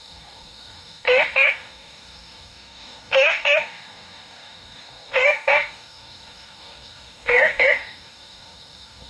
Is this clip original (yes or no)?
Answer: no